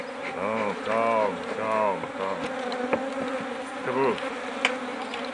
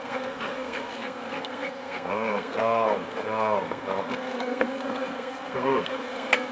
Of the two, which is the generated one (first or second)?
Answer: second